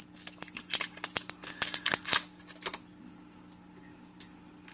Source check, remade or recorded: recorded